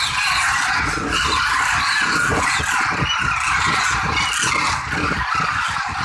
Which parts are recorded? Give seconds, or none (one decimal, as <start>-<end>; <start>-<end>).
0.0-6.0